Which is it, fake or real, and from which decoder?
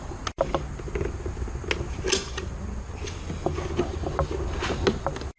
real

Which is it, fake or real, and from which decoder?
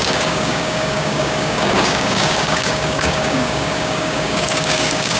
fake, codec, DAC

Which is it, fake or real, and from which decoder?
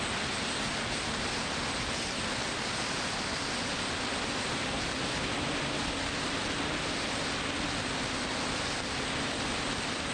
real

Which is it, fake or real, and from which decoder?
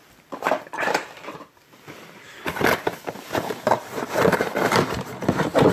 fake, vocoder, BigVGAN v2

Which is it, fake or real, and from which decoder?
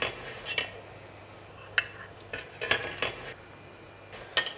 real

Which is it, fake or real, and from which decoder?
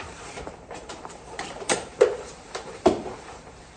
fake, vocoder, BigVGAN v2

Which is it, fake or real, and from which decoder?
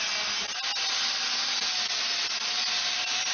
real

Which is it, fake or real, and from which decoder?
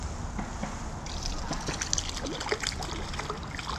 real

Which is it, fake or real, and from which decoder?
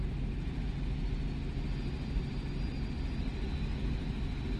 real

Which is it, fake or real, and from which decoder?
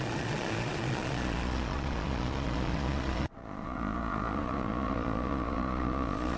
fake, vocoder, Vocos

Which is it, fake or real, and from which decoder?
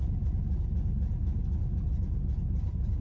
real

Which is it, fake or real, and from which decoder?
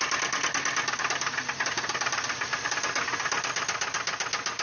real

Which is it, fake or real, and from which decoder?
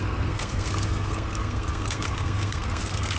fake, codec, SNAC